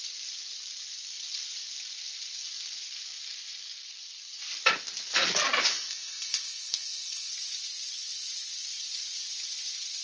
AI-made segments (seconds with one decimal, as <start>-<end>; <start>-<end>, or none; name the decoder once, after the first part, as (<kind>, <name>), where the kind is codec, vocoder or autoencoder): 5.7-7.3 (codec, SNAC)